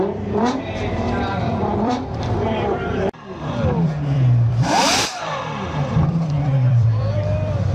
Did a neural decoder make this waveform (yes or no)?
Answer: yes